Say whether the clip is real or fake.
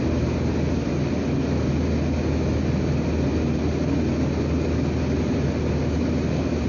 real